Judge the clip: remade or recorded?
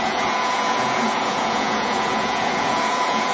remade